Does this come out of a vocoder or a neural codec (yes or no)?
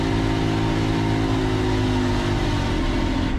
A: no